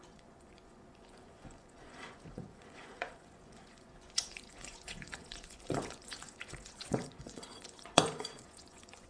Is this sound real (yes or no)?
no